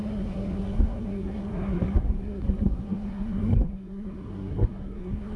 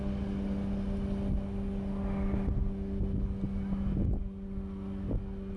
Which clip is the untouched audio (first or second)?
second